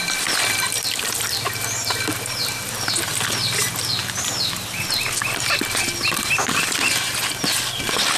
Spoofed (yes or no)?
no